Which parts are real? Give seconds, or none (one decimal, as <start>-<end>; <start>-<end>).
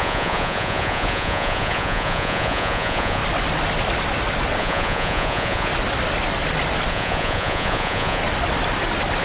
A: 3.2-4.6; 5.7-6.9; 8.2-9.2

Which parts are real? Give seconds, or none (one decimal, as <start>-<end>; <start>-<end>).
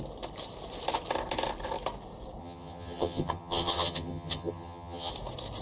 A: 0.0-2.4; 5.1-5.6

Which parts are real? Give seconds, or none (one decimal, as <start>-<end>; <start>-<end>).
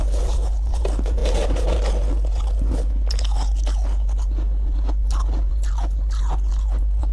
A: 0.0-7.1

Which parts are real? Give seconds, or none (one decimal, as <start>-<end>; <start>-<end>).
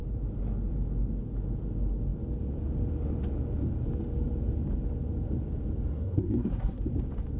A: 0.0-5.9; 6.8-7.4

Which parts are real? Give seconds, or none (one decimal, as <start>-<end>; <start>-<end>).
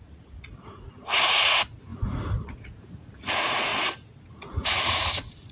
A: 3.7-4.3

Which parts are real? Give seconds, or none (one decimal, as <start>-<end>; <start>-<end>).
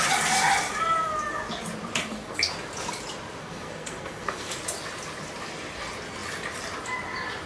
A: 0.0-2.0; 2.5-3.4; 4.5-7.5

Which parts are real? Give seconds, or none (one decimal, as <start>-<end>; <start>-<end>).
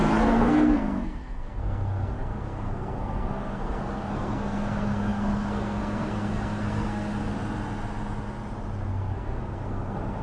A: 7.3-8.9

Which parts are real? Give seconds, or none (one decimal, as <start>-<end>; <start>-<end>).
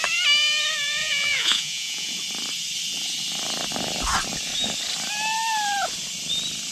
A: 0.0-1.0; 2.1-6.7